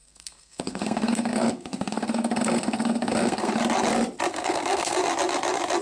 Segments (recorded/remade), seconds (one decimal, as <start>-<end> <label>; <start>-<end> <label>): 0.0-3.5 remade; 3.5-4.3 recorded; 4.3-5.0 remade; 5.0-5.8 recorded